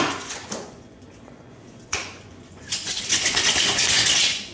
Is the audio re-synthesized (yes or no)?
yes